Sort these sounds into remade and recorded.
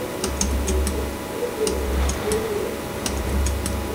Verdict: recorded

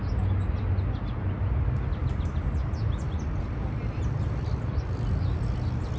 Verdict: recorded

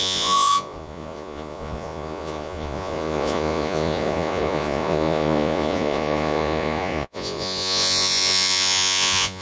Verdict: remade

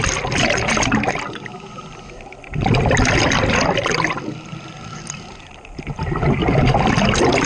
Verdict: recorded